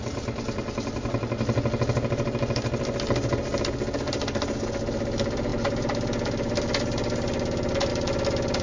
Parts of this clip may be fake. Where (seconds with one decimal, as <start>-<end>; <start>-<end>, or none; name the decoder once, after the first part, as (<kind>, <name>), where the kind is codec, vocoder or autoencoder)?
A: none